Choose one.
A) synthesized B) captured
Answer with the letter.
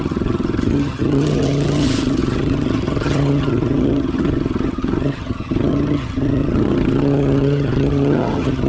A